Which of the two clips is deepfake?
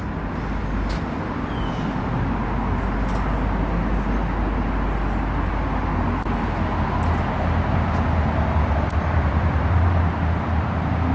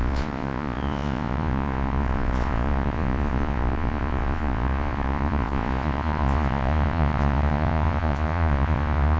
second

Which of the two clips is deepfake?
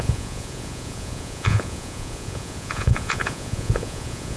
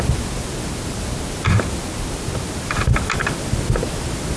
first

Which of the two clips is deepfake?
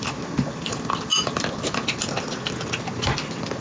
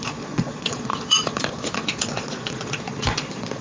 second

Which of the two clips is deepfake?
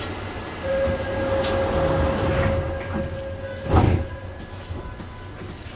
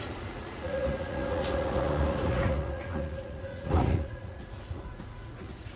second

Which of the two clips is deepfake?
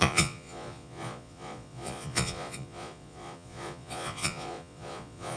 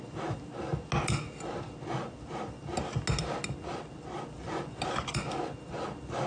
first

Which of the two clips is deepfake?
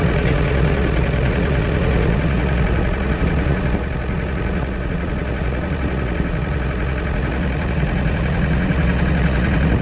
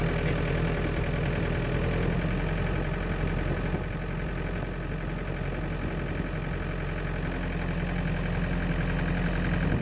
first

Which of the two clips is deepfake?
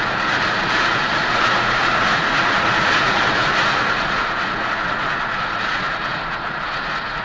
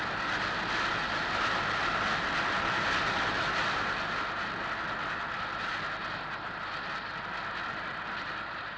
first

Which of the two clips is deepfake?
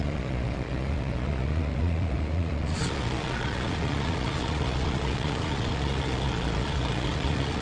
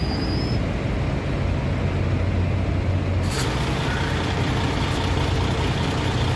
first